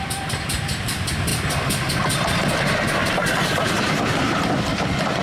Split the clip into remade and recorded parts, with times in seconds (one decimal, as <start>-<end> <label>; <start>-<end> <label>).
0.0-5.2 recorded